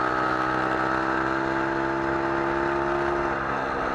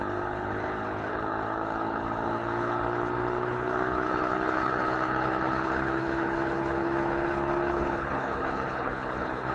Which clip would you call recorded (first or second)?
first